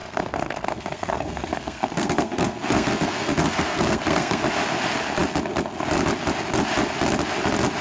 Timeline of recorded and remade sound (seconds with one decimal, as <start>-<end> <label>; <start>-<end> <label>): 0.0-4.4 remade; 4.4-7.8 recorded